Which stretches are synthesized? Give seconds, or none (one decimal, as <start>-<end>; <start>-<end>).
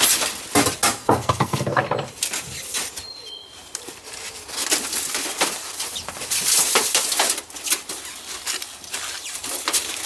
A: 1.0-1.8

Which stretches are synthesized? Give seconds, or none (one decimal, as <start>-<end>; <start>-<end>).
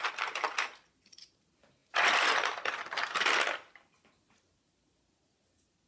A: none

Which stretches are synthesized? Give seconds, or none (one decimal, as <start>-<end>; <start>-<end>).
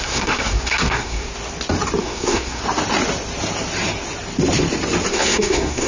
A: 0.0-1.3; 2.0-2.6; 5.1-5.9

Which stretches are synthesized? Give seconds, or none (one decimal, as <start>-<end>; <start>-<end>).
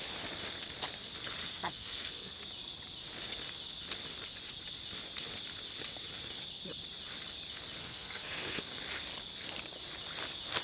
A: 1.4-2.4; 7.8-8.6